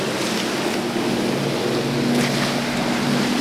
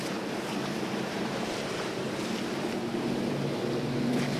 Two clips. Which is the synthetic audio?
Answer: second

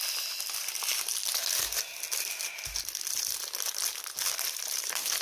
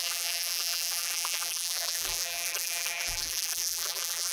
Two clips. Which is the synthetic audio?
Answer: second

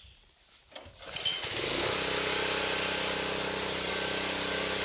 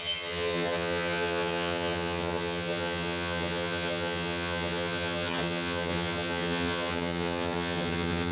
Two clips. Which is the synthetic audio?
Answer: second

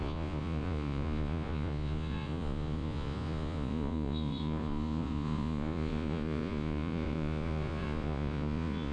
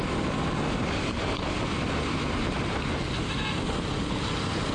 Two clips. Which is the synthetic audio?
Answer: first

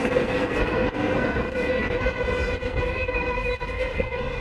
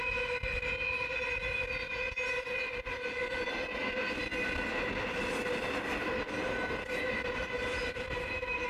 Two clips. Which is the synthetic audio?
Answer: first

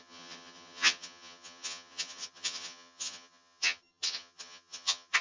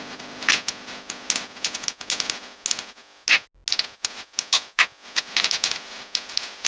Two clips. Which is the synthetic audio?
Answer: first